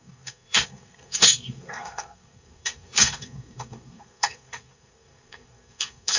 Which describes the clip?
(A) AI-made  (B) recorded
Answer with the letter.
A